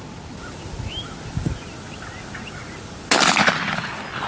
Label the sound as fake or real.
real